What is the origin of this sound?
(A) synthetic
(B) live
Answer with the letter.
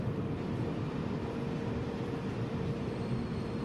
A